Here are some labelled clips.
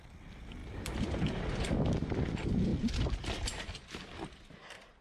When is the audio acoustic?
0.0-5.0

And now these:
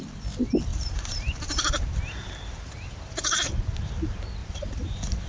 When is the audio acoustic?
0.0-0.7; 3.9-4.4

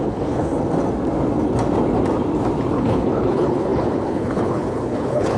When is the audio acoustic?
0.5-2.7

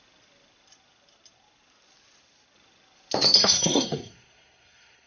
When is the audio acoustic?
0.0-3.4

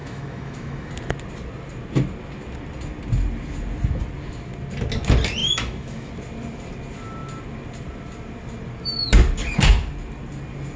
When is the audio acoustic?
0.9-5.4; 6.1-10.8

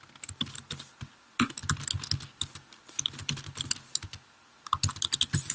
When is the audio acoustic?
0.0-5.5